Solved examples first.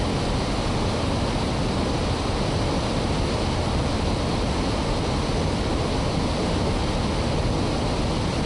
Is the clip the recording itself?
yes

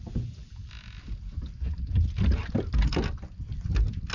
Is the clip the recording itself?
yes